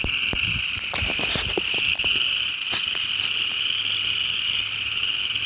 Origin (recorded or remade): recorded